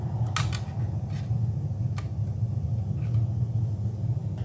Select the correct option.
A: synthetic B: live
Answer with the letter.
B